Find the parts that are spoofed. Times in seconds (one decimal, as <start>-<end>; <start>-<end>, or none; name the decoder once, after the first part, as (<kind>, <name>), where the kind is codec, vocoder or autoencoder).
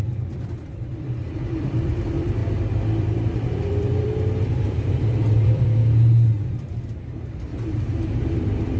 0.0-5.8 (vocoder, BigVGAN v2); 6.3-7.5; 8.2-8.8